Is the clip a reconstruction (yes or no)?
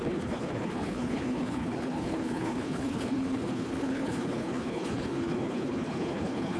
yes